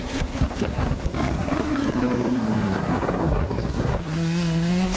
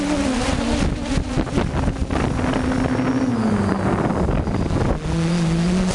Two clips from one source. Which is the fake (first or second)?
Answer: first